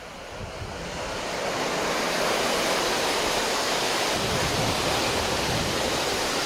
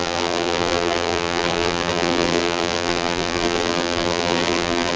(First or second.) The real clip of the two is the first